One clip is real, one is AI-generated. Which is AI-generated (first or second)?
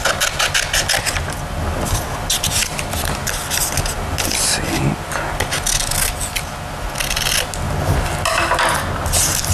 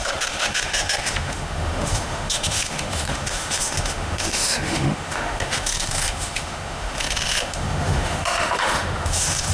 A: second